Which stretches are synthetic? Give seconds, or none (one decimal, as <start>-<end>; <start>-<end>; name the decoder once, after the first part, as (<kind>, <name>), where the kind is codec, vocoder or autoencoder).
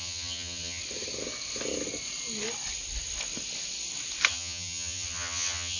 0.0-0.8 (vocoder, HiFi-GAN); 4.3-5.8